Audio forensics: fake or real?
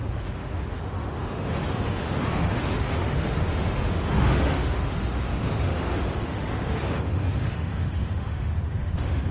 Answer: fake